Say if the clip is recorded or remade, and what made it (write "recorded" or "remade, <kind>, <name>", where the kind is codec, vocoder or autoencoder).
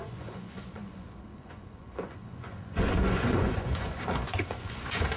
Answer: remade, vocoder, Vocos